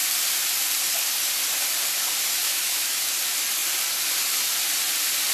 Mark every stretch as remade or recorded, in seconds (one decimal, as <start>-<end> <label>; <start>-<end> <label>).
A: 0.0-2.4 recorded; 2.4-3.2 remade; 3.2-5.3 recorded